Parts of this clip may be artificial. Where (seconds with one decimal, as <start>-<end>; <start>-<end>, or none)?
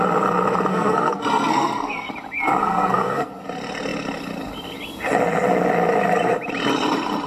0.7-2.1; 2.6-3.3